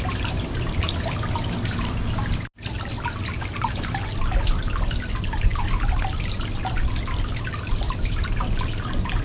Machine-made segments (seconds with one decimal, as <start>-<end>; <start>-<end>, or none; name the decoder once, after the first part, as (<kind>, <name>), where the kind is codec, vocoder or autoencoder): none